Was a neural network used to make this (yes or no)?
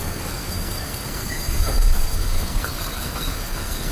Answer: yes